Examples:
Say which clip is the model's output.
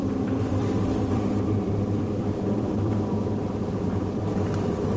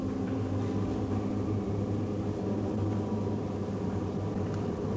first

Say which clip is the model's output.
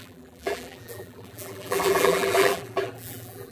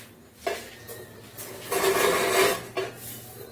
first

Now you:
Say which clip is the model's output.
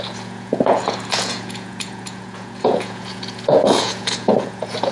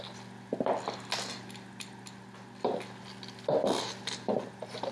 first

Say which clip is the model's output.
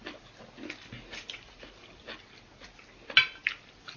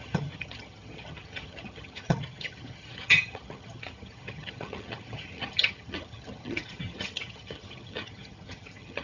second